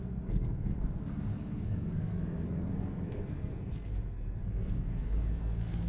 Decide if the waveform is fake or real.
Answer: fake